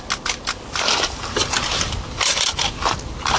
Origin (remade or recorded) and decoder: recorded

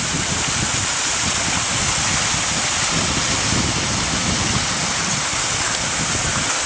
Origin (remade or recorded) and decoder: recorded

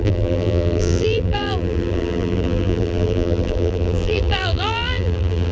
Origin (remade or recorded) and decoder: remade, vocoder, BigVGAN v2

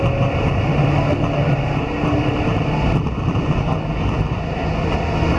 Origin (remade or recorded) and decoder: recorded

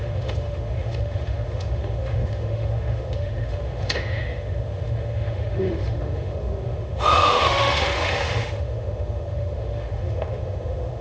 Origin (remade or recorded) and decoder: remade, autoencoder, DAC-VAE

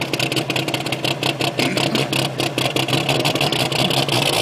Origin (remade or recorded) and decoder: recorded